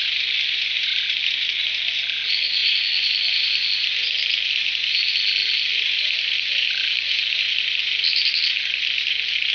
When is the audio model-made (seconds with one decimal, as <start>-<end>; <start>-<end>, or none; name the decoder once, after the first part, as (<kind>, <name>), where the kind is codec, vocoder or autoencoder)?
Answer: none